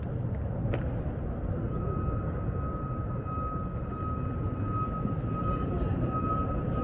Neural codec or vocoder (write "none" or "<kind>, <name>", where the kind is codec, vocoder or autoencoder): none